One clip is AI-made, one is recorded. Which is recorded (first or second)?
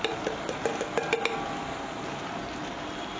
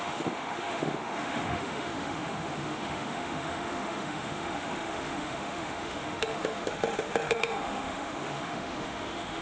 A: first